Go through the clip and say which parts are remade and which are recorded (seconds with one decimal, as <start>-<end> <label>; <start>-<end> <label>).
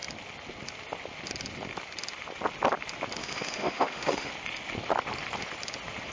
0.0-3.2 recorded; 3.2-4.3 remade; 4.3-6.1 recorded